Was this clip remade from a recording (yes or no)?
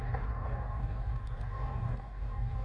yes